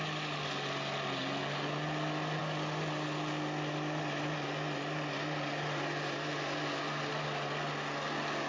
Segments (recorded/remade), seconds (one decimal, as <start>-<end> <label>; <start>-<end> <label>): 0.0-8.5 recorded